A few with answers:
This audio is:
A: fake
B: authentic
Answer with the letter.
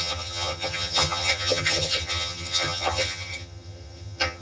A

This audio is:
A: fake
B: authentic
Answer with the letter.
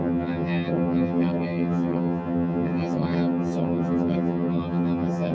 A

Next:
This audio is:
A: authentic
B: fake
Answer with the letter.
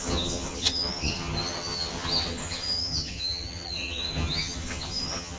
B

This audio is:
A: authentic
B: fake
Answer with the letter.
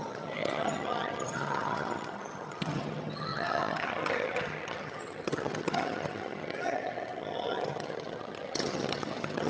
B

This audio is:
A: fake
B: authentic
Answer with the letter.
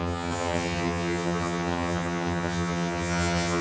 A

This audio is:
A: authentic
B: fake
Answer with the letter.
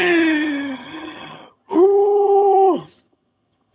B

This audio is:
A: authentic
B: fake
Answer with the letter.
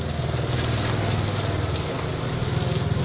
A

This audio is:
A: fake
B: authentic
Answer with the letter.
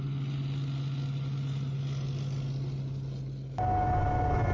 B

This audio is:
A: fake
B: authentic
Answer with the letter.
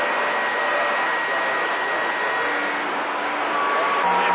B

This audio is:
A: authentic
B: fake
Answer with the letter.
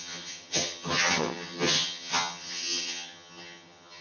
B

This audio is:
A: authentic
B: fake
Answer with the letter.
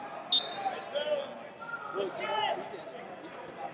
A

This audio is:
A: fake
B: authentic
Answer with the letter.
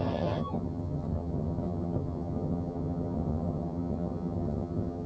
A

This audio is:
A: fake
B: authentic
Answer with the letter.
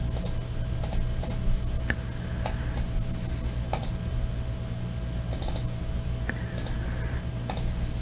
B